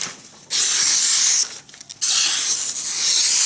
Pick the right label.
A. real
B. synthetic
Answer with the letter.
A